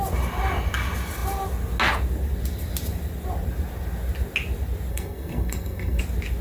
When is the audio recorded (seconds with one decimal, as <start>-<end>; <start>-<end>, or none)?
0.0-4.9; 6.0-6.4